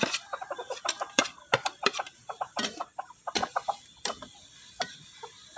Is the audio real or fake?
fake